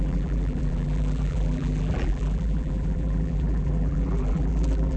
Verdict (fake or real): fake